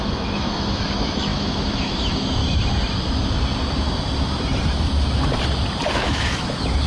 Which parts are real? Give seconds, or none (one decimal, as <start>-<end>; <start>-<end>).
2.4-5.9

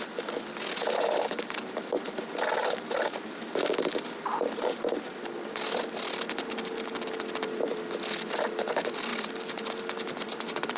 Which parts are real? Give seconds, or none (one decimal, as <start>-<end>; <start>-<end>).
0.0-0.8; 3.7-4.3; 5.8-10.8

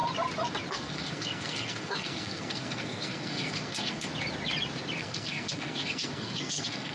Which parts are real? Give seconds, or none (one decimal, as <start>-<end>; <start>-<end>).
0.0-0.7; 4.1-5.0

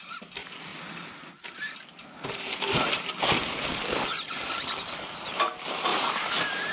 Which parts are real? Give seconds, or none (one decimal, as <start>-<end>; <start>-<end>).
0.0-5.9